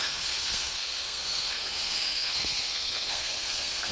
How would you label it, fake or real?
fake